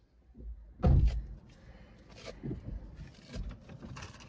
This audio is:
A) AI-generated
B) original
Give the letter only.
B